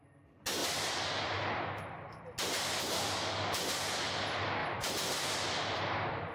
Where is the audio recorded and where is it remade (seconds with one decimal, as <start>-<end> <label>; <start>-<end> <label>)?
0.0-6.3 recorded

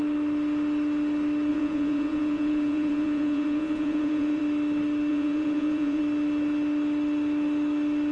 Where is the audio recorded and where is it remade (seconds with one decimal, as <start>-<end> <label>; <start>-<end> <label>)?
0.0-1.5 recorded; 1.5-4.4 remade; 4.4-5.1 recorded; 5.1-6.0 remade; 6.0-8.1 recorded

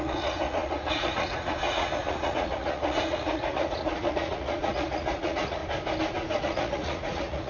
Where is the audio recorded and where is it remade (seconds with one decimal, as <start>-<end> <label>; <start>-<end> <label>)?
0.0-5.6 remade; 5.6-6.4 recorded; 6.4-7.5 remade